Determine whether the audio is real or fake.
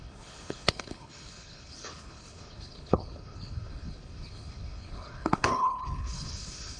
fake